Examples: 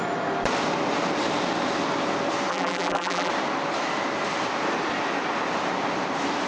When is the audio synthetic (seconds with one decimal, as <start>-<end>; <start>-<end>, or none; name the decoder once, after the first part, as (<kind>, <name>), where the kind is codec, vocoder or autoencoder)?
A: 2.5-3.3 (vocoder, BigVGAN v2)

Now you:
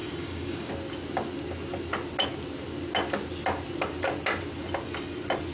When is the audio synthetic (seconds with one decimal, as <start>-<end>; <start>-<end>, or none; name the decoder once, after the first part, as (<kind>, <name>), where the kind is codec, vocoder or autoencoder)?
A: 0.0-0.7 (codec, DAC)

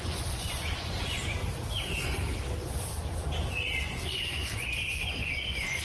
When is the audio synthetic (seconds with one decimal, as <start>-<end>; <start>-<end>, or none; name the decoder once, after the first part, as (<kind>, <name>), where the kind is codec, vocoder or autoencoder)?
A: 0.0-1.4 (vocoder, Vocos); 3.8-5.8